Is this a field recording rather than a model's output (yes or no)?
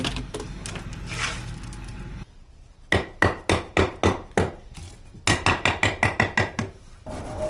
yes